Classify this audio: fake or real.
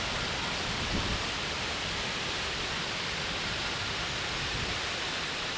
real